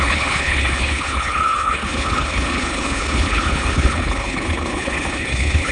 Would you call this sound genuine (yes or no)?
no